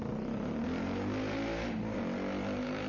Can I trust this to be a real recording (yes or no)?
yes